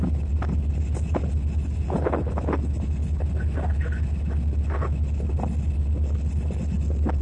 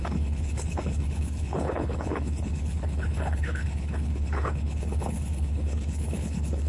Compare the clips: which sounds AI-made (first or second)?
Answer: second